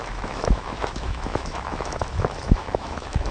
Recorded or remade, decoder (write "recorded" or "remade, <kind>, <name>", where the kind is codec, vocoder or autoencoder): remade, autoencoder, DAC-VAE